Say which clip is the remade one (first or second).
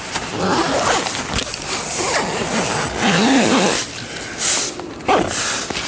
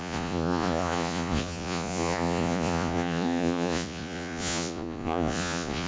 second